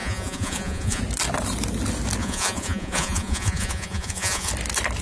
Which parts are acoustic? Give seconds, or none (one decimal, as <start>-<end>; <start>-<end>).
1.0-2.2; 4.5-5.0